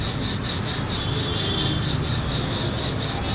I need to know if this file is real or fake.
real